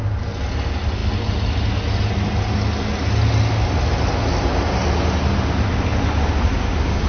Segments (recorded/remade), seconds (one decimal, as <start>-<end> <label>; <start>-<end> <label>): 0.0-7.1 recorded